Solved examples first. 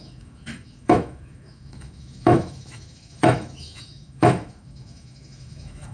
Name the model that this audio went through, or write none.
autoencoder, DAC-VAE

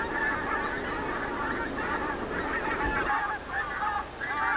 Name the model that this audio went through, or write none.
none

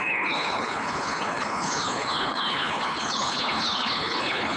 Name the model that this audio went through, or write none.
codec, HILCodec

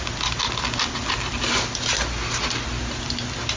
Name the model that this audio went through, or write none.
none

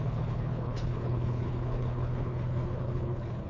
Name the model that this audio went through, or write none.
codec, HILCodec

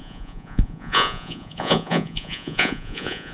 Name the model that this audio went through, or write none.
vocoder, Vocos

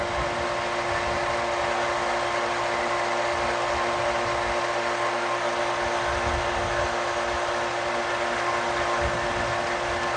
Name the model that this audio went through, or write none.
none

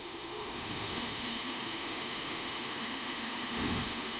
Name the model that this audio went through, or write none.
autoencoder, DAC-VAE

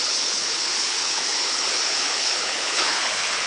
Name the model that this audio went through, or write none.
codec, HILCodec